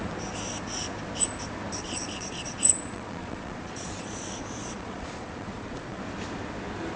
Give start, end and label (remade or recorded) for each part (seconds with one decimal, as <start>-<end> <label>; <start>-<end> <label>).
0.0-1.8 recorded; 1.8-6.0 remade; 6.0-7.0 recorded